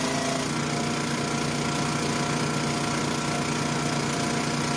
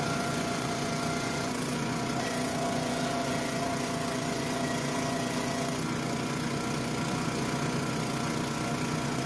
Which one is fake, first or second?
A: second